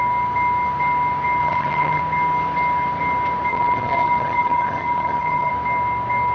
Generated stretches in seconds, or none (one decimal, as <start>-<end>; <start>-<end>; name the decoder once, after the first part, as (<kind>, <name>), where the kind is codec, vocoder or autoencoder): 1.4-2.0 (vocoder, HiFi-GAN); 3.5-5.5